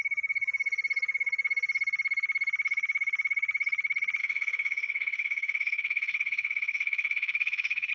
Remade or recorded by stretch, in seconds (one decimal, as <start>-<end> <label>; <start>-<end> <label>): 0.0-4.2 recorded; 4.2-7.9 remade